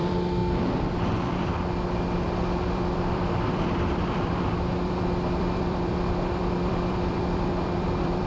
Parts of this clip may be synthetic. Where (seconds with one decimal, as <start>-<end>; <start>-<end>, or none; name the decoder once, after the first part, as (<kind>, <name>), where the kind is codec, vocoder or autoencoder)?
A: 0.0-0.4 (vocoder, BigVGAN v2); 2.6-8.3